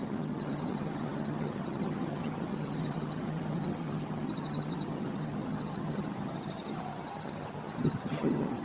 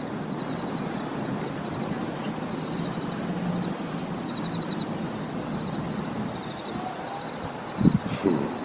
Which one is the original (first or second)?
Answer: second